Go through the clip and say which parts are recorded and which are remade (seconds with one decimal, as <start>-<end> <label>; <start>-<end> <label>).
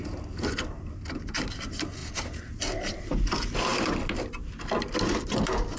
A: 0.0-2.0 recorded; 2.0-2.6 remade; 2.6-5.8 recorded